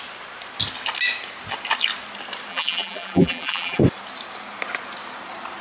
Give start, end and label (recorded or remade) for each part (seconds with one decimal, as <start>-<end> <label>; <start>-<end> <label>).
0.0-2.5 recorded; 2.5-3.8 remade; 3.8-5.6 recorded

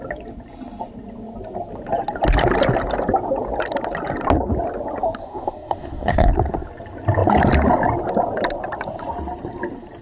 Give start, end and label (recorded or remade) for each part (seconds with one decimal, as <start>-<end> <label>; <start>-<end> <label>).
0.0-5.2 recorded; 5.2-6.3 remade; 6.3-10.0 recorded

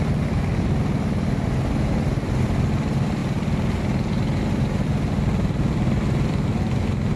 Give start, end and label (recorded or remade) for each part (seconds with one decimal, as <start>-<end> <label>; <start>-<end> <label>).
0.0-7.2 recorded

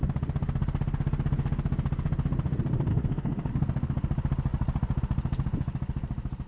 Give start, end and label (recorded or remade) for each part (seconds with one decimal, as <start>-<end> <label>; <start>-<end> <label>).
0.0-2.9 recorded; 2.9-3.5 remade; 3.5-6.5 recorded

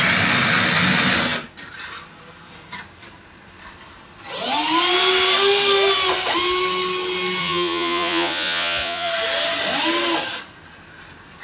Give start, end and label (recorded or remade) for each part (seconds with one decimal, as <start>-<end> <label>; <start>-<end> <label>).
0.0-7.4 recorded; 7.4-9.1 remade; 9.1-11.4 recorded

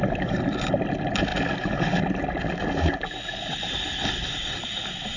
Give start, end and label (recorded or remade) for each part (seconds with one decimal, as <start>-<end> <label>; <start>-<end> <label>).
0.0-3.5 recorded; 3.5-4.6 remade; 4.6-5.2 recorded